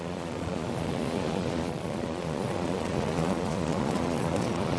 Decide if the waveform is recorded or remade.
remade